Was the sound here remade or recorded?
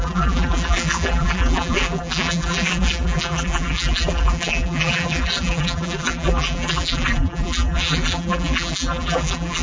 remade